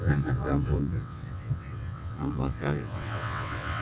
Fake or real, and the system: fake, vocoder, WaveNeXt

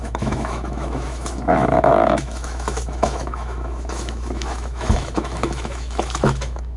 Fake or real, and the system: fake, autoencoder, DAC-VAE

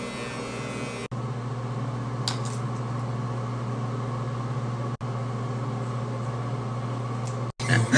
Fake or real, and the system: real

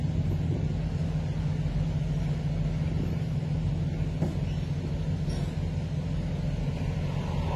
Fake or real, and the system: real